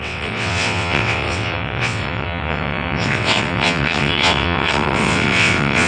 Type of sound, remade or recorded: remade